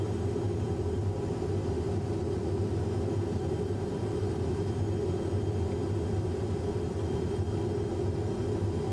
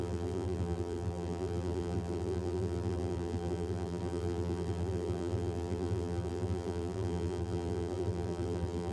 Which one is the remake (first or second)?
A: second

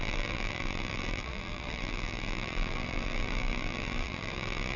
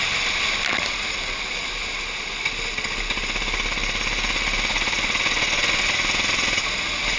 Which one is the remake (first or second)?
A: first